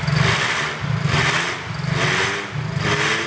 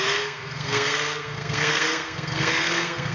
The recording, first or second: first